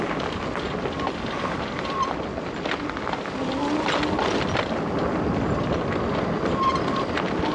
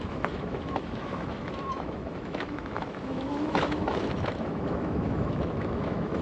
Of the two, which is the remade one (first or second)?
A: second